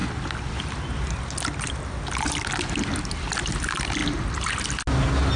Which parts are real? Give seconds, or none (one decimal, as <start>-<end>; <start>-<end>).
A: 0.0-5.4